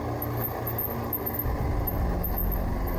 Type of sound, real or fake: real